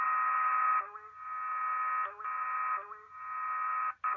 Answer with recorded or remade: recorded